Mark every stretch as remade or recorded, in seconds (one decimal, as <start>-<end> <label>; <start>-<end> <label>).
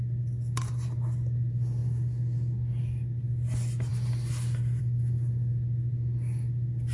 0.0-6.9 recorded